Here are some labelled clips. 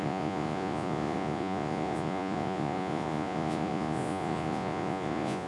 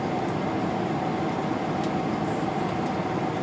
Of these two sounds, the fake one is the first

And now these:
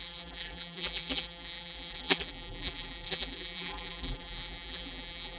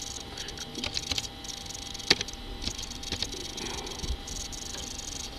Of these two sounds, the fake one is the first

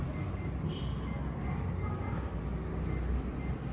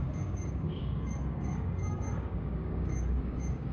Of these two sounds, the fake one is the second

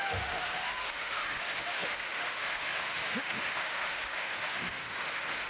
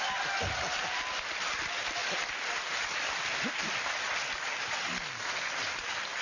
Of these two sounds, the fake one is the first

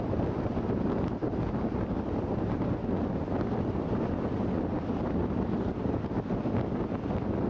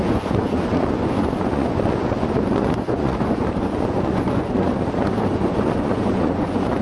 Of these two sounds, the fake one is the second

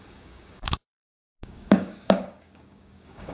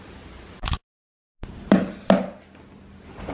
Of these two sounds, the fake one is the first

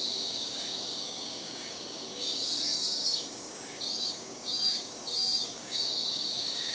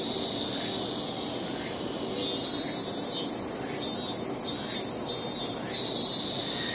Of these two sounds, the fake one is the first